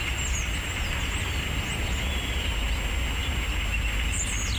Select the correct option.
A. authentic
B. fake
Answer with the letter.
A